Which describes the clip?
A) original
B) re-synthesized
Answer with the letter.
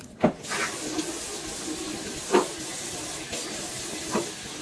A